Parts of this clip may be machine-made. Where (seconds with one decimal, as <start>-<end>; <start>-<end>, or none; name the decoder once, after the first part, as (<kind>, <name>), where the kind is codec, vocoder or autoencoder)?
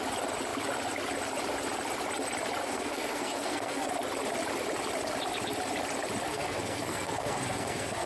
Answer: 2.6-3.9 (codec, SNAC); 6.3-8.1